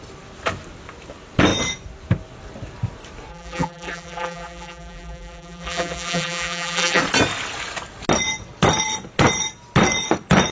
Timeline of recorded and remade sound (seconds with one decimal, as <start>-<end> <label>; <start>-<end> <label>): 0.0-3.3 recorded; 3.3-7.0 remade; 7.0-10.5 recorded